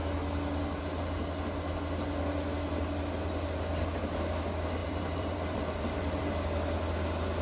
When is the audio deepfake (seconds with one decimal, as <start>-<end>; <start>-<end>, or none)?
4.8-6.3